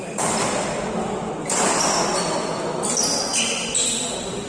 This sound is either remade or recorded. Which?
recorded